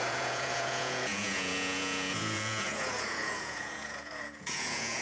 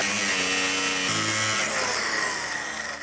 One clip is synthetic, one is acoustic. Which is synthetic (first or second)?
first